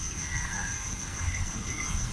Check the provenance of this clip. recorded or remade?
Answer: remade